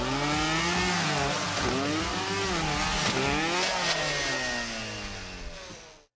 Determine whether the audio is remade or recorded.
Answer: recorded